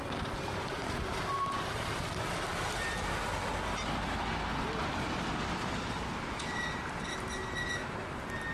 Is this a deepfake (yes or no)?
no